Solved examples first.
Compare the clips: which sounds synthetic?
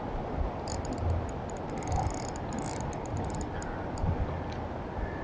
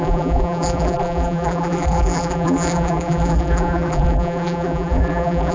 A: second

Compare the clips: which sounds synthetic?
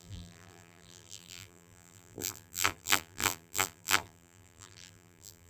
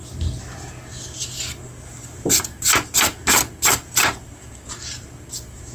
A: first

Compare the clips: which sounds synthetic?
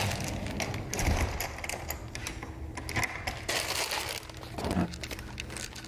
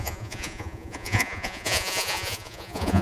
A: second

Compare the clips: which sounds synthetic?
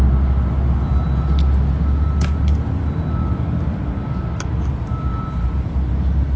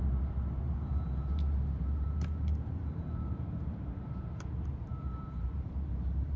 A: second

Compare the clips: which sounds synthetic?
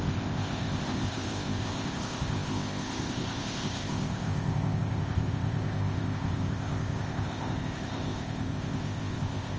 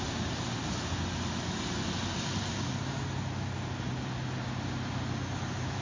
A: first